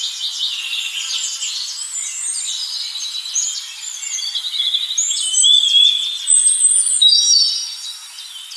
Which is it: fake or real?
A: real